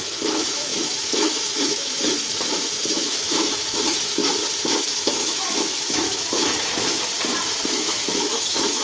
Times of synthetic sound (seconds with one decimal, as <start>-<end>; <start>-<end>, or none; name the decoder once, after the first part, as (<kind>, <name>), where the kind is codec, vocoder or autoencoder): 0.0-4.2 (autoencoder, DAC-VAE); 4.8-6.9; 7.7-8.8